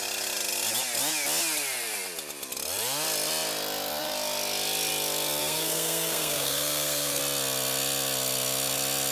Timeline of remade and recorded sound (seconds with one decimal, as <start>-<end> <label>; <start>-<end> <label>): 0.0-5.4 recorded; 5.4-7.2 remade; 7.2-9.1 recorded